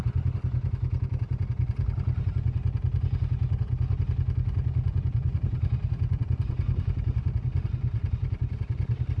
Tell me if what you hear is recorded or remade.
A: recorded